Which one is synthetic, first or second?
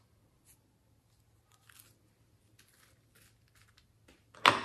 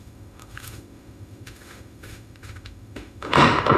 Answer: second